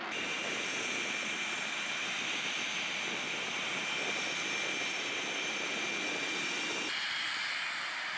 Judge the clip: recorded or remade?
recorded